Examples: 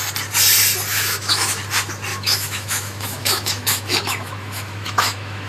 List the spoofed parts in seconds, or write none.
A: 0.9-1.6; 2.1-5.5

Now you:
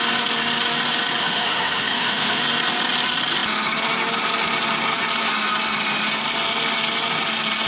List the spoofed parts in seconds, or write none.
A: 1.2-2.4

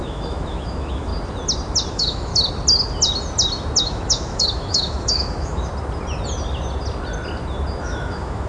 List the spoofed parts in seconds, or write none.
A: 0.0-1.1; 1.9-2.3; 3.8-5.7; 7.8-8.5